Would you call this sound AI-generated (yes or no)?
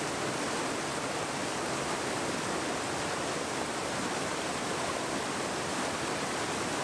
no